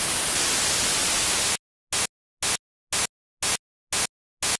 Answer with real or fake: real